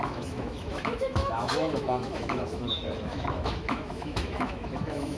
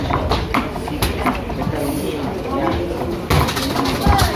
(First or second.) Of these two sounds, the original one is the second